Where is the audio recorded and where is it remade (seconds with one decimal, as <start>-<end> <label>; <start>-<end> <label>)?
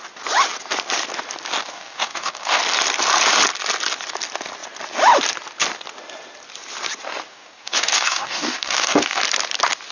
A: 0.0-1.6 recorded; 1.6-2.6 remade; 2.6-7.3 recorded; 7.3-9.2 remade; 9.2-9.9 recorded